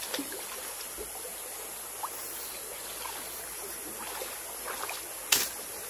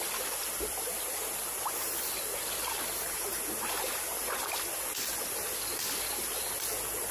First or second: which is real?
first